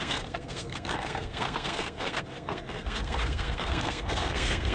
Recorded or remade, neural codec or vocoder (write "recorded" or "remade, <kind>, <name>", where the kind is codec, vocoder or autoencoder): remade, codec, SNAC